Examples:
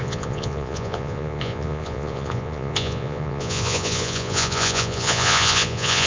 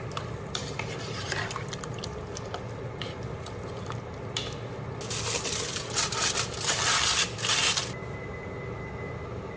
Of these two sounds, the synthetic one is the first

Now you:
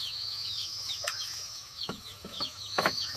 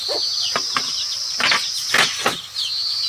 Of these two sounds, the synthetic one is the first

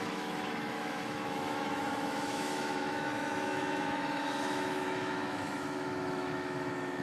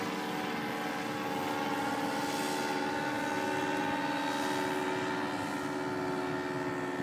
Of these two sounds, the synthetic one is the first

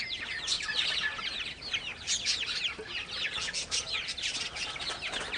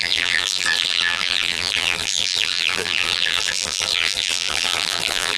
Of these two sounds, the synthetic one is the second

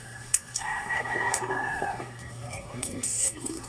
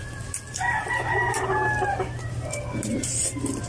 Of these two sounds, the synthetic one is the first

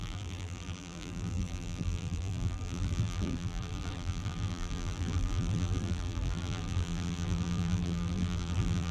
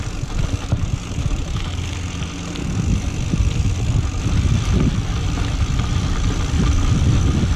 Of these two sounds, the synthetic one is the first